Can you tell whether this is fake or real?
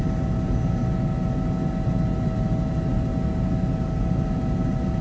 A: real